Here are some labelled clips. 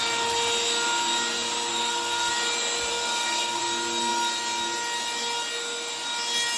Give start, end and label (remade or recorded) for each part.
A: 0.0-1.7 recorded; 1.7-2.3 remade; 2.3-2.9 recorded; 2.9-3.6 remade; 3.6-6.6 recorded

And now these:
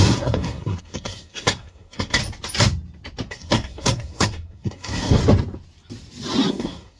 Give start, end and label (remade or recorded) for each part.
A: 0.0-2.2 remade; 2.2-3.3 recorded; 3.3-5.2 remade; 5.2-6.5 recorded; 6.5-7.0 remade

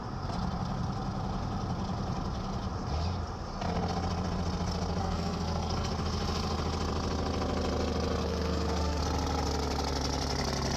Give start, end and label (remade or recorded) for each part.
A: 0.0-5.0 recorded; 5.0-5.9 remade; 5.9-8.2 recorded; 8.2-9.0 remade; 9.0-10.8 recorded